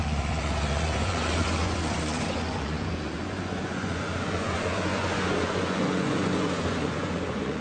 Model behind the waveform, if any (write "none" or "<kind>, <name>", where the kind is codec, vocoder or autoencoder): vocoder, Vocos